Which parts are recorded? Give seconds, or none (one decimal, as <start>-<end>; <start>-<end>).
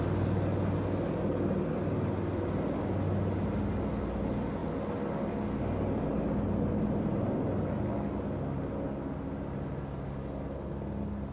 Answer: 0.0-11.3